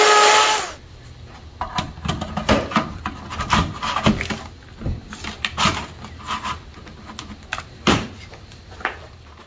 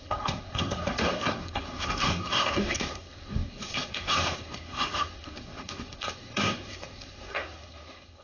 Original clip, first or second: first